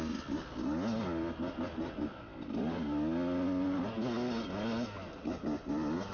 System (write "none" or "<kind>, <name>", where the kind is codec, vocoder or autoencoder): none